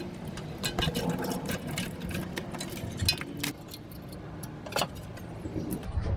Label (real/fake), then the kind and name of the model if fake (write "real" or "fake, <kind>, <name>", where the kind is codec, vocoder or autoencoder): real